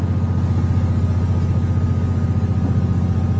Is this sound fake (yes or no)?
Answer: no